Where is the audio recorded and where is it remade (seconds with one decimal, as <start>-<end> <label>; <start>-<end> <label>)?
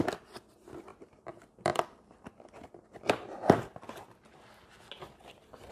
0.0-0.9 recorded; 0.9-2.3 remade; 2.3-5.7 recorded